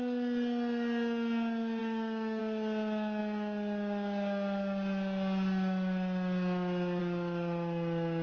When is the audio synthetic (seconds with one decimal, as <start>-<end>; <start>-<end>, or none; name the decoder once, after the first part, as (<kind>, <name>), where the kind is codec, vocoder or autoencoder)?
1.8-2.4 (autoencoder, DAC-VAE)